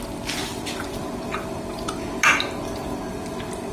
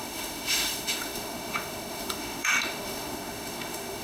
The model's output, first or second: second